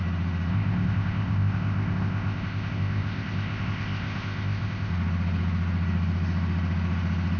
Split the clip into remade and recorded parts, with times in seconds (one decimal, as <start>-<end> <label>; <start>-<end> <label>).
0.0-0.5 recorded; 0.5-4.9 remade; 4.9-7.4 recorded